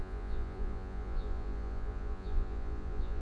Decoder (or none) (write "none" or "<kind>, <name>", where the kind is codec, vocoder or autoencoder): vocoder, Vocos